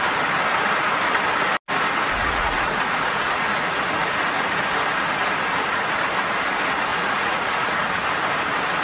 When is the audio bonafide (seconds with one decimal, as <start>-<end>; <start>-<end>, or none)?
0.0-2.2; 4.6-6.9; 7.9-8.8